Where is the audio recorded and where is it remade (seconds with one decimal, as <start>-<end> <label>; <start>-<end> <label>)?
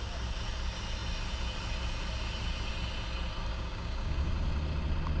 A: 0.0-3.5 recorded; 3.5-4.3 remade; 4.3-5.2 recorded